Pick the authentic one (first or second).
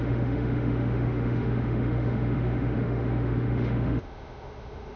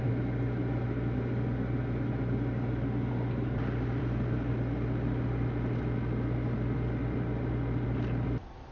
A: second